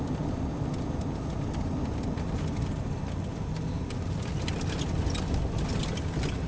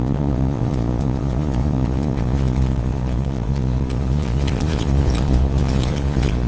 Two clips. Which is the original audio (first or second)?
first